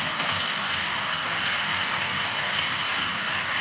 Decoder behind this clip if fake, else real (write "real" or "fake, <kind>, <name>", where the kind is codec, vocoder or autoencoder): fake, codec, DAC